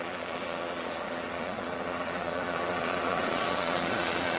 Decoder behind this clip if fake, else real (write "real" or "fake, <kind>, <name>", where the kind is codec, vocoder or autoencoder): fake, vocoder, Vocos